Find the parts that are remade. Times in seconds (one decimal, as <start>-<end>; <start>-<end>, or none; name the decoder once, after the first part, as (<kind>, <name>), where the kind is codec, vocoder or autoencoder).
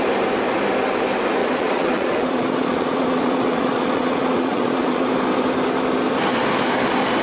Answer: 1.4-5.1 (vocoder, Vocos)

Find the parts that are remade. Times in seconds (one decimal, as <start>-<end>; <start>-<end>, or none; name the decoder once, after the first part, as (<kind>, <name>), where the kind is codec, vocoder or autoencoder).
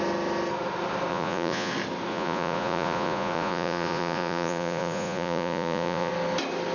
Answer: 1.1-1.7 (vocoder, Vocos); 2.1-6.1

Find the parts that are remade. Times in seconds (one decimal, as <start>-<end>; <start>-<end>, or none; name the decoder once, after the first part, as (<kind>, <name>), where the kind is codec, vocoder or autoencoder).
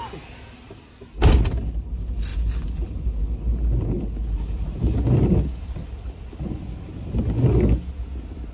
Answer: none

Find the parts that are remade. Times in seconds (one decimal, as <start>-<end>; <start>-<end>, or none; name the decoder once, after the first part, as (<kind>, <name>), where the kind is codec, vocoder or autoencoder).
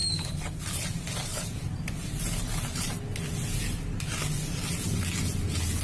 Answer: none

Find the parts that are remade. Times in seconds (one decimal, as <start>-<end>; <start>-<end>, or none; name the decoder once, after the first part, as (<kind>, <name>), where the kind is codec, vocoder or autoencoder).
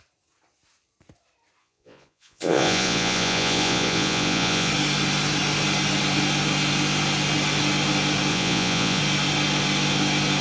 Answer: 1.6-4.7 (vocoder, Vocos); 8.3-9.0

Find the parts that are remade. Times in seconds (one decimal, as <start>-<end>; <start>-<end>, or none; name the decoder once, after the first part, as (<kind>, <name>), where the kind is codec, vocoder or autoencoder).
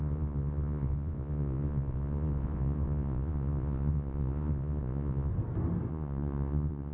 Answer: 0.0-5.3 (vocoder, Vocos); 5.9-6.9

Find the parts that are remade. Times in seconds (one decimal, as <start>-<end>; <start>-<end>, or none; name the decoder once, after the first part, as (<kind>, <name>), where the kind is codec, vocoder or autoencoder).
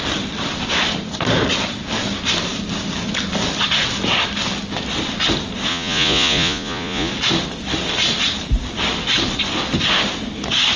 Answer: 5.7-7.1 (vocoder, Vocos)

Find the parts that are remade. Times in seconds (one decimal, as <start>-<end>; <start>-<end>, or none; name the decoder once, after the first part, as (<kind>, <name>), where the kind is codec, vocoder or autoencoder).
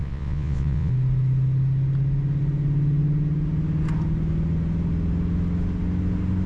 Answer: 0.0-0.9 (vocoder, Vocos)